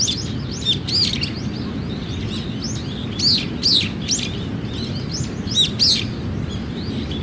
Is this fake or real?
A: real